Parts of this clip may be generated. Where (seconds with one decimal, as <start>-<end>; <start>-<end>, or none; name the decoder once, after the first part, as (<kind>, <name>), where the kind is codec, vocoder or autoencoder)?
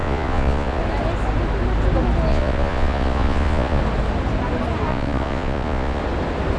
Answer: 0.0-0.8 (vocoder, Vocos); 2.3-3.8; 4.9-6.0